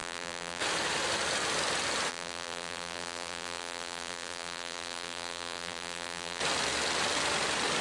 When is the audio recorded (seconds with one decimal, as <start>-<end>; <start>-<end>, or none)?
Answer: 0.6-2.1; 6.4-7.8

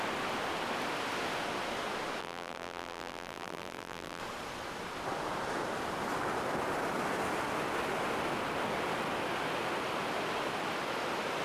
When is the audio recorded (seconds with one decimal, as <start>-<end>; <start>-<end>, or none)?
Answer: 0.0-2.2; 4.2-11.4

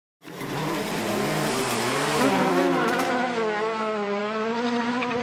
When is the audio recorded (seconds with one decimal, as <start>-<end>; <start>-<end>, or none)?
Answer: 2.6-5.2

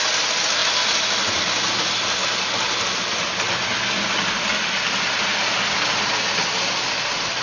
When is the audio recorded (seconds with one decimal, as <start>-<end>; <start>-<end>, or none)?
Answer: 0.0-0.6; 1.9-7.4

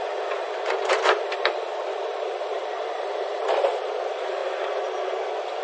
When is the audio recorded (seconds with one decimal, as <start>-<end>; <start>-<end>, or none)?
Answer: 4.4-5.6

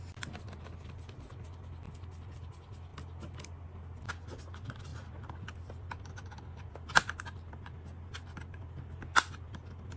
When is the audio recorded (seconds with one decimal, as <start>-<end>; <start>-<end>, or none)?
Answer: 0.0-4.9; 6.7-10.0